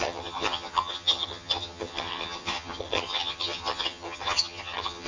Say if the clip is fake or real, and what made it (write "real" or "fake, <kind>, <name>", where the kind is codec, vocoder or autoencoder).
fake, vocoder, HiFi-GAN